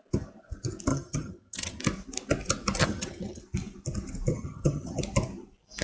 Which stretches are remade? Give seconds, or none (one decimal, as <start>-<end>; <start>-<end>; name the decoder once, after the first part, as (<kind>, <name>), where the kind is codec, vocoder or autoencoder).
0.9-1.8 (vocoder, HiFi-GAN); 2.8-3.4; 4.3-5.0